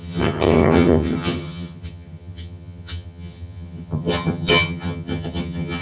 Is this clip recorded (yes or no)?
no